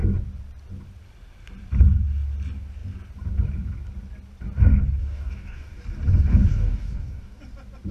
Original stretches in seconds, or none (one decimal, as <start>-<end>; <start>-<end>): 0.0-5.0; 5.8-6.5; 7.4-7.9